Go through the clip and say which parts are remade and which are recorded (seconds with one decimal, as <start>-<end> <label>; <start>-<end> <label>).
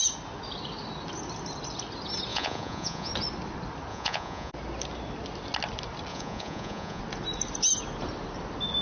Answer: 0.0-2.3 recorded; 2.3-3.1 remade; 3.1-3.9 recorded; 3.9-4.5 remade; 4.5-6.1 recorded; 6.1-7.0 remade; 7.0-8.8 recorded